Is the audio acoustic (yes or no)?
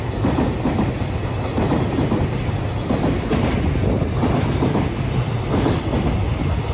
yes